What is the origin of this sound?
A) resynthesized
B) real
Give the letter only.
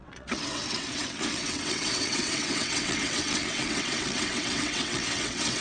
A